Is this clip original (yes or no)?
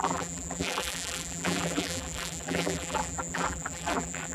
no